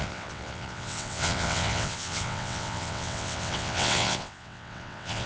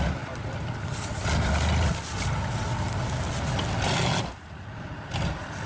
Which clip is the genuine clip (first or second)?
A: second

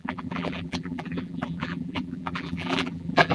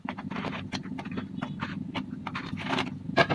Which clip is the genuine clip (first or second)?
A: second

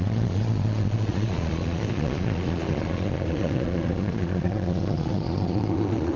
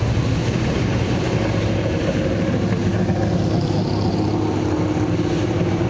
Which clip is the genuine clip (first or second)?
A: second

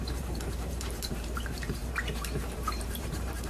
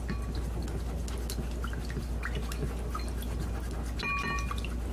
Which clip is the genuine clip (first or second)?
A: second